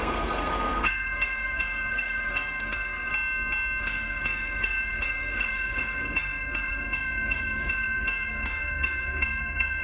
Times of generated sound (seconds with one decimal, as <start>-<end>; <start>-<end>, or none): 0.0-3.1; 3.8-9.8